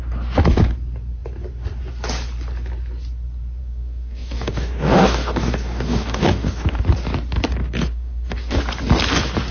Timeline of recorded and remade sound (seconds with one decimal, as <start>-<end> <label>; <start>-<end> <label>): 0.0-3.6 recorded; 3.6-6.8 remade; 6.8-7.6 recorded; 7.6-8.6 remade; 8.6-9.5 recorded